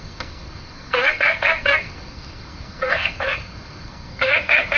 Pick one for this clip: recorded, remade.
remade